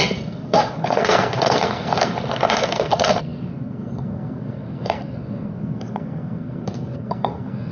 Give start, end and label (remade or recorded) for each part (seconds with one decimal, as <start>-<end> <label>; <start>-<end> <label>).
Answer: 0.0-7.7 remade